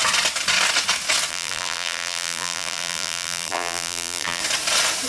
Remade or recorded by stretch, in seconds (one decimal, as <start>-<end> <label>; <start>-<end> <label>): 0.0-1.3 recorded; 1.3-4.4 remade; 4.4-5.1 recorded